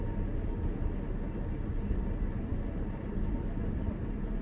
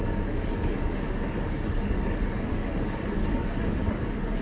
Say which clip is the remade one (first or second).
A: second